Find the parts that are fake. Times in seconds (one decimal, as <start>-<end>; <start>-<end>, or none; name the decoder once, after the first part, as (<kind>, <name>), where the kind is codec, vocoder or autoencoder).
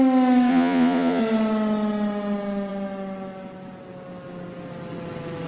0.5-1.2 (vocoder, Vocos)